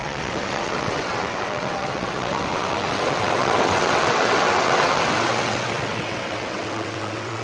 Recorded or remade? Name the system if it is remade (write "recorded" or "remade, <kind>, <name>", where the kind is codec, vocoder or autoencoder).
remade, vocoder, WaveNeXt